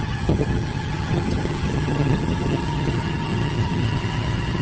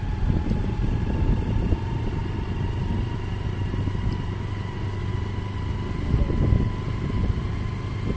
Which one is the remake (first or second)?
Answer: first